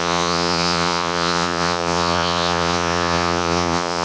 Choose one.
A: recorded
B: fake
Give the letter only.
B